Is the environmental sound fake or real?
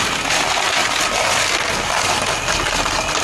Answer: real